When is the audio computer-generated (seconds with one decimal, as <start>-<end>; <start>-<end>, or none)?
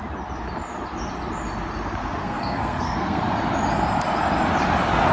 2.2-3.2